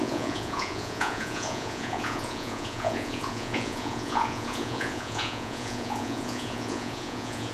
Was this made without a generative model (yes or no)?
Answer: no